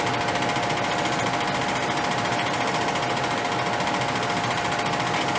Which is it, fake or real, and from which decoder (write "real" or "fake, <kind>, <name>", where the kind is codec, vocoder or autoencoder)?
real